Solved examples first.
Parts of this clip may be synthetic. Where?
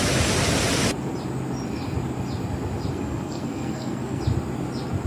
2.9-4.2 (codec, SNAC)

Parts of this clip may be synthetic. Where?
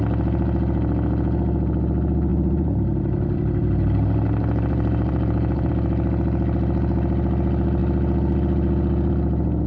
2.3-5.7 (vocoder, BigVGAN v2)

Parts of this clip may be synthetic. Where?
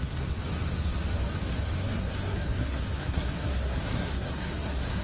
1.8-5.0 (codec, SNAC)